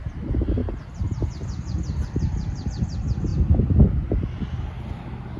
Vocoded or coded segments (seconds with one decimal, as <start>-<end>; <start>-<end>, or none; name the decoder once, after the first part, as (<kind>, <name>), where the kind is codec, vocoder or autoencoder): none